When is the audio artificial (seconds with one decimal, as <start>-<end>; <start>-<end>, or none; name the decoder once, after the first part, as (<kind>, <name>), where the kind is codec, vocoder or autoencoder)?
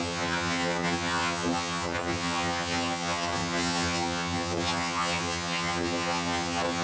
0.0-6.8 (vocoder, HiFi-GAN)